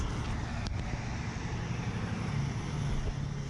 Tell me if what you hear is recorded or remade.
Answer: recorded